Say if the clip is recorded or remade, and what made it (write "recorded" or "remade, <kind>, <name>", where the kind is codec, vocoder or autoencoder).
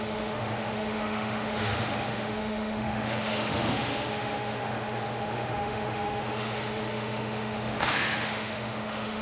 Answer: remade, autoencoder, DAC-VAE